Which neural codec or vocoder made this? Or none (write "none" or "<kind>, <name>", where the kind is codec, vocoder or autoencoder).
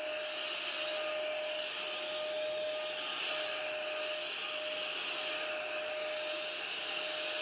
none